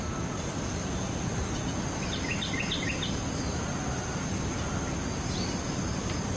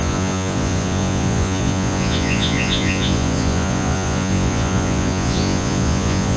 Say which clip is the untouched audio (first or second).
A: first